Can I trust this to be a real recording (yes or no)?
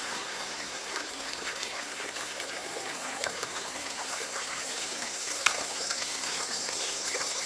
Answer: no